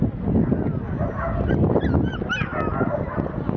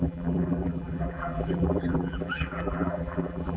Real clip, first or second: first